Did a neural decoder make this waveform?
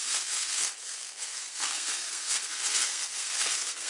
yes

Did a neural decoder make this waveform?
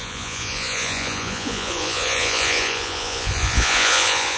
yes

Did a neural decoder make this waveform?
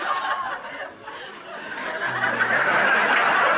no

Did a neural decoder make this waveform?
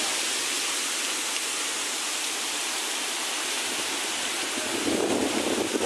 no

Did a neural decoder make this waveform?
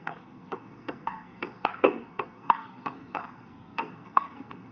yes